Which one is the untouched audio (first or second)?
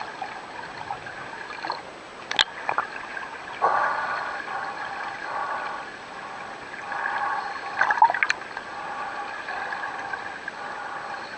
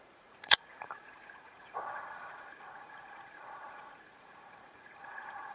first